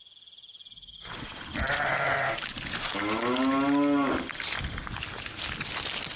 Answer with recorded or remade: recorded